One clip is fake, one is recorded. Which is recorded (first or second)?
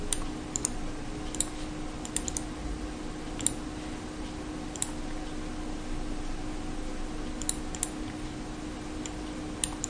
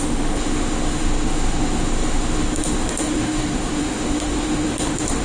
first